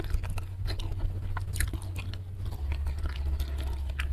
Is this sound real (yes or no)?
yes